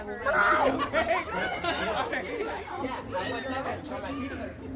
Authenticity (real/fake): real